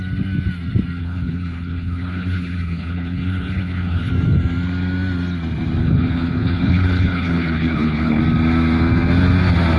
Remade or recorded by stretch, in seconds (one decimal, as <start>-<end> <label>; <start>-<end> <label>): 0.0-1.0 recorded; 1.0-4.1 remade; 4.1-5.8 recorded; 5.8-8.2 remade; 8.2-9.8 recorded